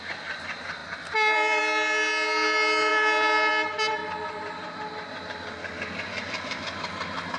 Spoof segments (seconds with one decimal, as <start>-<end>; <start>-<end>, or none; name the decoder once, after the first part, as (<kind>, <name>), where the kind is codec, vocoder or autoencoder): 0.8-1.6 (vocoder, BigVGAN v2); 2.9-3.5; 4.0-5.2; 6.1-6.6